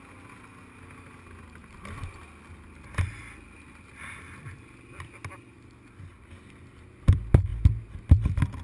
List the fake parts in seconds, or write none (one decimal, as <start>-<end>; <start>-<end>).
none